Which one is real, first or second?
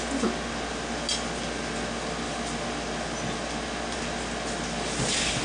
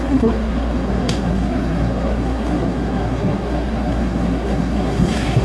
first